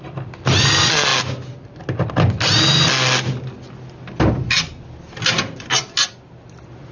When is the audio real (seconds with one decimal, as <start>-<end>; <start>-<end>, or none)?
0.0-6.9